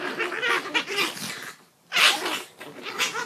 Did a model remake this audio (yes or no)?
no